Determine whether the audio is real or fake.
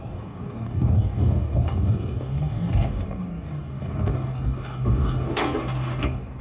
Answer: fake